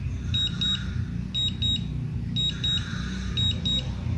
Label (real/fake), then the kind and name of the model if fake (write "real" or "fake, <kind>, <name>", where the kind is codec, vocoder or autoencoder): real